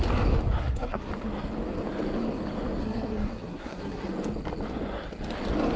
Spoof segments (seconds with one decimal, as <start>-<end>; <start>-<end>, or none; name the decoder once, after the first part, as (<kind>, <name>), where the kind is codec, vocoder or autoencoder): 0.6-1.1 (codec, SNAC); 2.8-4.1